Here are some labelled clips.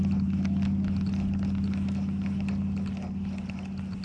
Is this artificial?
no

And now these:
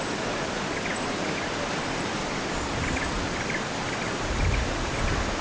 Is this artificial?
no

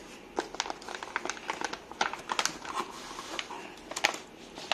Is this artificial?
no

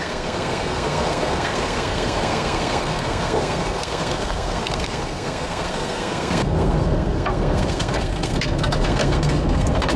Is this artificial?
yes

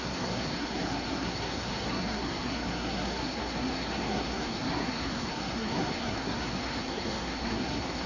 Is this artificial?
yes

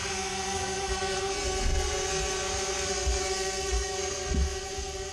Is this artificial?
yes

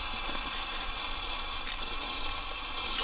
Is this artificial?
no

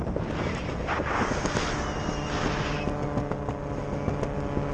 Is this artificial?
no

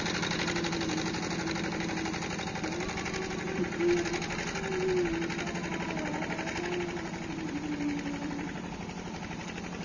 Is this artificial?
no